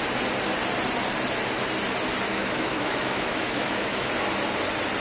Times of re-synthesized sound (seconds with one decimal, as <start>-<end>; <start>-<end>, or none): 2.3-4.1